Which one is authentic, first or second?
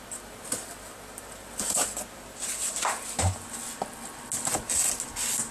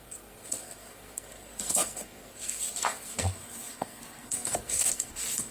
first